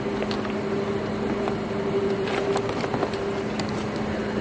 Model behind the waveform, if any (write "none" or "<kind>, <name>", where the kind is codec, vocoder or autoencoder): none